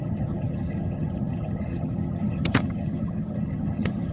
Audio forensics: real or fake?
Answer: fake